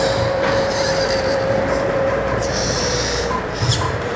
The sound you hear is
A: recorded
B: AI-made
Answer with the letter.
B